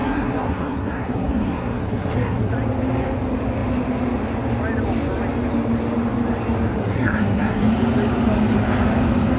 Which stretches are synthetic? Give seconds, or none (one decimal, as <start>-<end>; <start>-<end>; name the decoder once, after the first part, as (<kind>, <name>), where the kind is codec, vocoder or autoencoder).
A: 0.0-2.5 (codec, SNAC); 6.8-7.7